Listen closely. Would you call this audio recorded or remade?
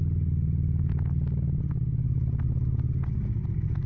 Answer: recorded